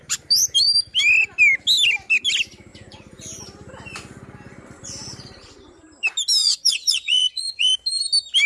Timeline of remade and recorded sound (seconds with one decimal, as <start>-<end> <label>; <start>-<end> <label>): 0.0-2.7 recorded; 2.7-3.4 remade; 3.4-6.4 recorded; 6.4-7.7 remade; 7.7-8.5 recorded

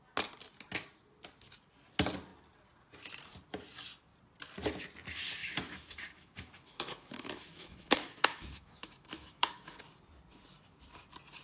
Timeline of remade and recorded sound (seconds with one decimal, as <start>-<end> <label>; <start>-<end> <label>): 0.0-5.4 recorded; 5.4-9.8 remade; 9.8-11.4 recorded

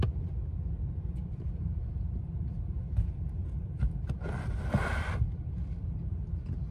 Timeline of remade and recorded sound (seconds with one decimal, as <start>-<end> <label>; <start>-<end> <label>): 0.0-1.2 recorded; 1.2-2.3 remade; 2.3-3.4 recorded; 3.4-5.5 remade; 5.5-6.7 recorded